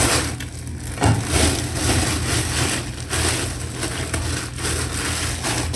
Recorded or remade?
recorded